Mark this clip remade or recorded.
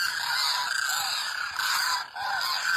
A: recorded